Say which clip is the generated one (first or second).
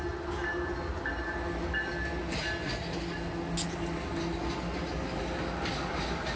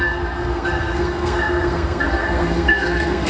second